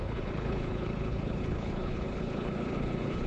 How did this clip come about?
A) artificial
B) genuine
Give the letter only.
A